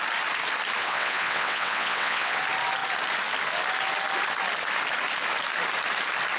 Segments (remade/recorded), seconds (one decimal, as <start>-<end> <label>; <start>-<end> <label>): 0.0-0.8 recorded; 0.8-2.4 remade; 2.4-6.4 recorded